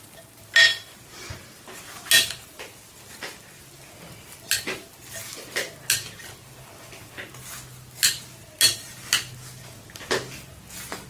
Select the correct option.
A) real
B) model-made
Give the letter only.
A